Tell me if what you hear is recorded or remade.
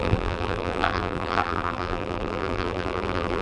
remade